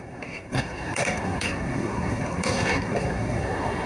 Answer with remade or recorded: remade